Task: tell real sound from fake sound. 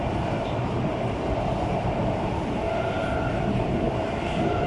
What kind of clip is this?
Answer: fake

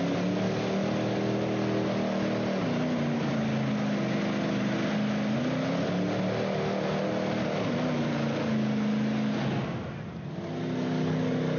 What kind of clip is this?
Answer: real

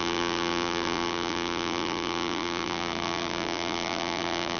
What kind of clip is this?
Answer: fake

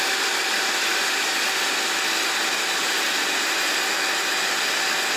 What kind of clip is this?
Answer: real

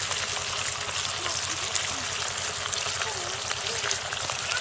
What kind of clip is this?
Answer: real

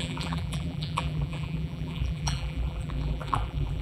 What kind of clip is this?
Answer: fake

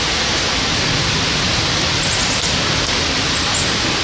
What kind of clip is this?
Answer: real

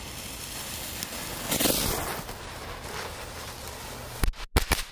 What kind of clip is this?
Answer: real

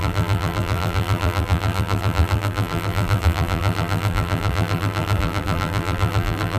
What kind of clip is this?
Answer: fake